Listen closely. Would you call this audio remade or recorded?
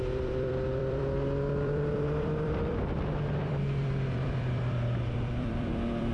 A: remade